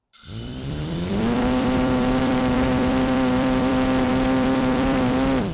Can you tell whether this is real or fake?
fake